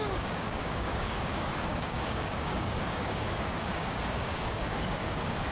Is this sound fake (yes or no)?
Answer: yes